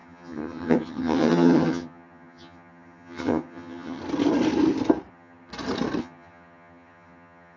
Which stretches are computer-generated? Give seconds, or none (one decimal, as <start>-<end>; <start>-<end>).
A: 0.0-4.0; 5.1-5.5; 6.0-7.6